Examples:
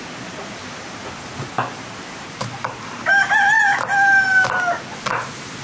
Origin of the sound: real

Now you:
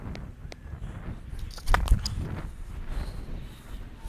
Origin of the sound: real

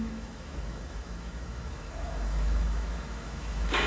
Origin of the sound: fake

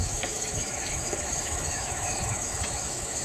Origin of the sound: fake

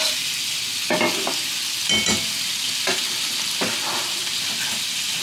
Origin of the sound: real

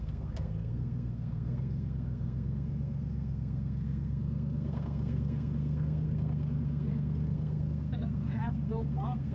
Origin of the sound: fake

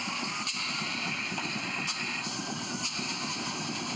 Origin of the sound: real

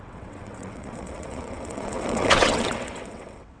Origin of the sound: fake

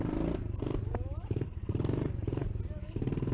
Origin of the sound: real